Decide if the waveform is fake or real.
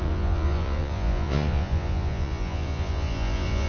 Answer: fake